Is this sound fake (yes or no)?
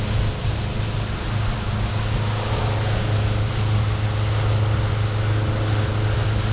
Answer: no